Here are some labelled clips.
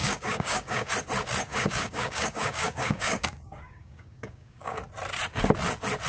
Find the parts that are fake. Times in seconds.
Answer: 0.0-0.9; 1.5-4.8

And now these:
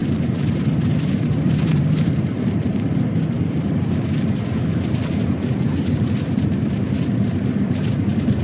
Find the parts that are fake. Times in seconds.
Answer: 0.0-8.4

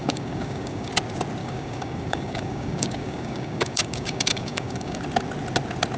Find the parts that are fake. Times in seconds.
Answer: 0.0-0.9; 1.4-5.0

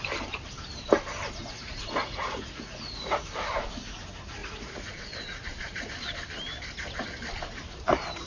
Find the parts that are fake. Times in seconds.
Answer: 1.4-3.3; 4.4-5.9

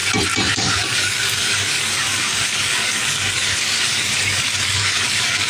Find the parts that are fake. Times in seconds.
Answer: 0.5-5.5

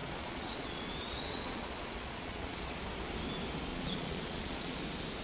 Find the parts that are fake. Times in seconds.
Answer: 0.0-2.8; 3.7-4.8

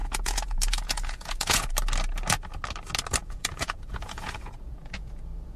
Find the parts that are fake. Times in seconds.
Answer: 0.0-1.7; 3.2-5.6